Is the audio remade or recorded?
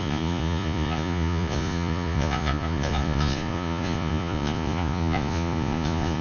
remade